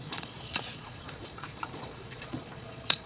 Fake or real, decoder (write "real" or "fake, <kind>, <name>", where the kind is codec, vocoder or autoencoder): fake, vocoder, Vocos